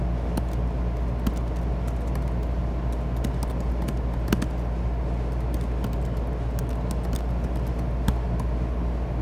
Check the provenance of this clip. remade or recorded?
recorded